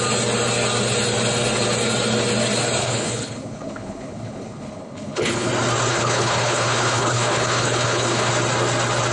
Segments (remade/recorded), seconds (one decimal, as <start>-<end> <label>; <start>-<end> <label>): 0.0-2.8 recorded; 2.8-5.5 remade; 5.5-5.9 recorded; 5.9-8.3 remade; 8.3-9.1 recorded